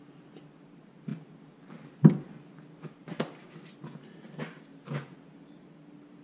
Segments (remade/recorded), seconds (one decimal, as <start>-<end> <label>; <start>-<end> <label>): 0.0-6.2 recorded